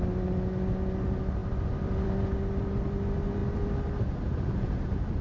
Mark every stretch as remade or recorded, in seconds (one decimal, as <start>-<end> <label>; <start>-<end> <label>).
0.0-5.2 recorded